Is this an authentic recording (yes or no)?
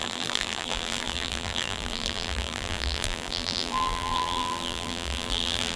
no